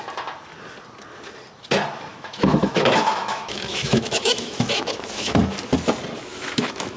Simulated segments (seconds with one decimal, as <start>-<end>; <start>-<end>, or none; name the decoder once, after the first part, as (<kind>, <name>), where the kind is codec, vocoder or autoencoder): 2.1-5.4 (autoencoder, DAC-VAE); 6.3-7.0